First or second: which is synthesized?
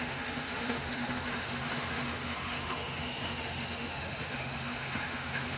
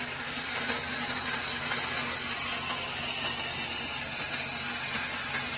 first